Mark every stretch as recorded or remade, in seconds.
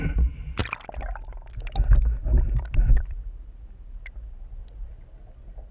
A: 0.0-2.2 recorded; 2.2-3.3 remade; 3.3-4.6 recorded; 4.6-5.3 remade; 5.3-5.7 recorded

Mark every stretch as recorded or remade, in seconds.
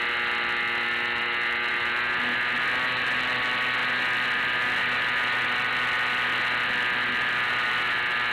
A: 0.0-8.3 recorded